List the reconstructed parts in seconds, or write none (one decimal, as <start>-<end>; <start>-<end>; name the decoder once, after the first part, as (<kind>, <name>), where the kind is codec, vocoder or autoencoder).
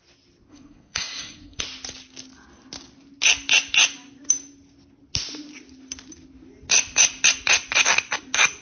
0.5-1.6 (codec, SNAC)